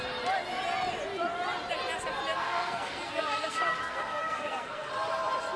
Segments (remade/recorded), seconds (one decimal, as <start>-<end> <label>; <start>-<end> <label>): 0.0-2.4 recorded; 2.4-4.9 remade; 4.9-5.6 recorded